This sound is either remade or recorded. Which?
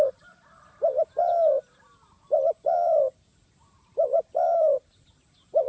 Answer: recorded